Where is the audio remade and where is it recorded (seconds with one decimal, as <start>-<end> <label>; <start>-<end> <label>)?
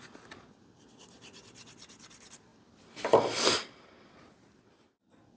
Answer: 0.0-5.4 recorded